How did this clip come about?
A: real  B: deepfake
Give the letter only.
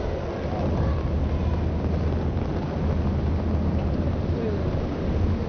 A